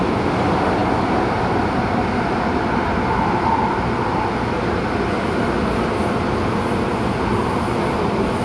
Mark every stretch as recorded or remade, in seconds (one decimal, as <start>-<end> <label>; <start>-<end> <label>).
0.0-8.4 recorded